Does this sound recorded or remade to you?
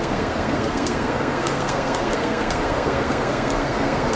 remade